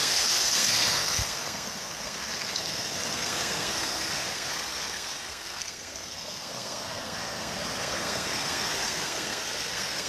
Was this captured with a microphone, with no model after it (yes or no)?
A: no